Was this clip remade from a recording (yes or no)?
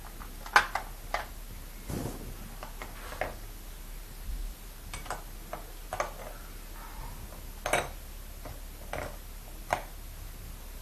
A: no